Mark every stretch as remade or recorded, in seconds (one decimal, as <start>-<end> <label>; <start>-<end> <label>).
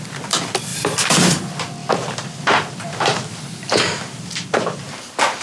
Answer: 0.0-0.7 recorded; 0.7-1.4 remade; 1.4-5.4 recorded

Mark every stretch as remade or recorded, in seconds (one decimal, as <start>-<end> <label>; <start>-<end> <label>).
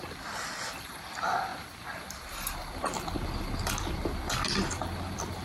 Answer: 0.0-5.4 recorded